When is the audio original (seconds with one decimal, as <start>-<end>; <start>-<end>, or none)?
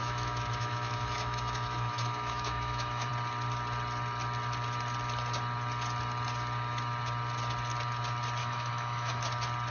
3.1-8.4; 9.2-9.7